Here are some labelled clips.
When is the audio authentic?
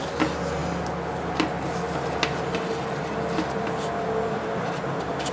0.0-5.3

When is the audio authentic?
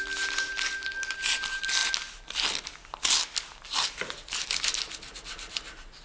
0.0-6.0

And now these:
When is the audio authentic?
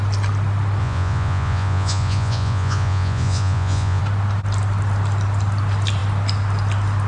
0.0-0.8; 4.0-7.1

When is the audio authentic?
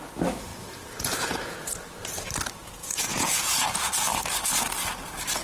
0.0-0.5; 1.7-2.6; 4.0-5.4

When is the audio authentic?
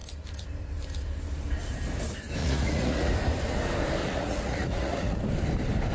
0.0-2.4; 3.1-4.0; 5.2-5.9